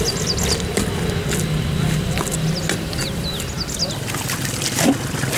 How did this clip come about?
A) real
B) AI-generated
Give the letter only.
A